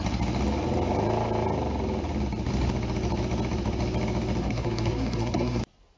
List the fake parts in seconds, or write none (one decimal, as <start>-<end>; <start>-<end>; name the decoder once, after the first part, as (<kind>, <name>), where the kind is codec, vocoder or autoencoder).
4.4-5.6 (codec, SNAC)